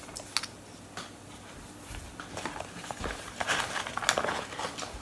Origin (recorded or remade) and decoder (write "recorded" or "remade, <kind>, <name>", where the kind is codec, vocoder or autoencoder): recorded